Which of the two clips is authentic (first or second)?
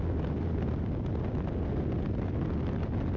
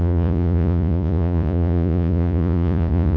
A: first